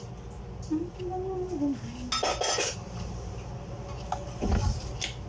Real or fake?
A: real